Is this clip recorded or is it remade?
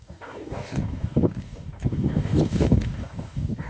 remade